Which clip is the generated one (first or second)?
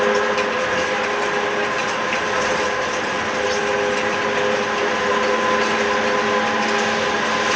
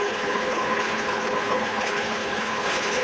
second